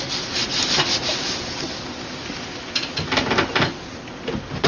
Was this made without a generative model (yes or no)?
yes